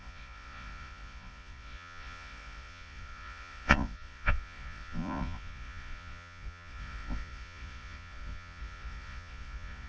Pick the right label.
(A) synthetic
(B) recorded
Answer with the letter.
A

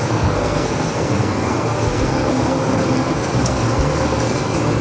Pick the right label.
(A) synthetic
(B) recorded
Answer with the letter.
A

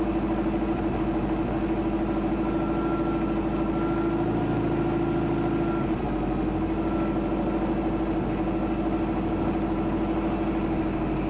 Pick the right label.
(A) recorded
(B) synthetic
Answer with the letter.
A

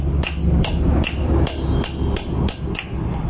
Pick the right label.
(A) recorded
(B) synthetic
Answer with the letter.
A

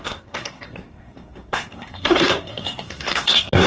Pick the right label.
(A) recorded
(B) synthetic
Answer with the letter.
B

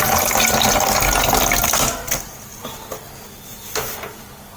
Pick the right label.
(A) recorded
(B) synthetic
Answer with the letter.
A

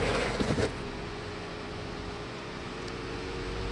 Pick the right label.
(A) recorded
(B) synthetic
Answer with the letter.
B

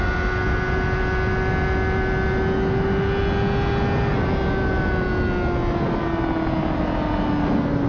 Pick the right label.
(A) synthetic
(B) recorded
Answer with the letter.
B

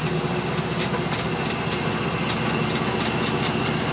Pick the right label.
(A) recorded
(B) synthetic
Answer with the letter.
A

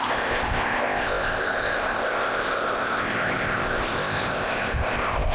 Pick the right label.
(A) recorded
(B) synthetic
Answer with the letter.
B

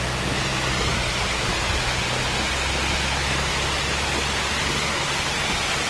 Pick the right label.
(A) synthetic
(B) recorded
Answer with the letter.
B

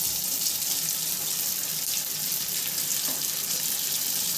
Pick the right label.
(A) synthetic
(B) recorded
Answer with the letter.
B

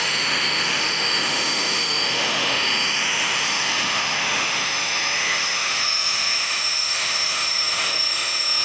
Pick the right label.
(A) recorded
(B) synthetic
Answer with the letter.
B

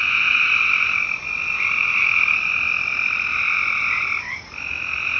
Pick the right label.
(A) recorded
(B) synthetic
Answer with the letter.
A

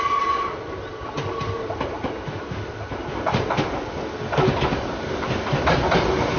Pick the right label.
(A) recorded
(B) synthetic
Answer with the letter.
A